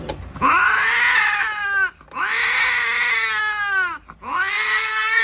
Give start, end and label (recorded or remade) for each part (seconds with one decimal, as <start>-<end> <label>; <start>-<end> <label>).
0.0-4.5 recorded; 4.5-5.2 remade